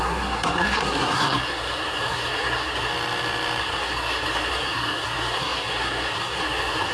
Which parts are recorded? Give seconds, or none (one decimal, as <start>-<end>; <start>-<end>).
2.9-3.6